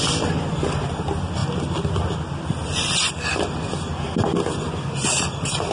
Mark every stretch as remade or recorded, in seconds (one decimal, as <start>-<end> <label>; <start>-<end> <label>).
0.0-1.4 remade; 1.4-3.1 recorded; 3.1-5.7 remade